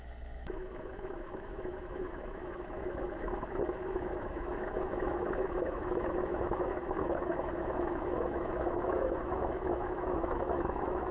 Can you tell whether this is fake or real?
fake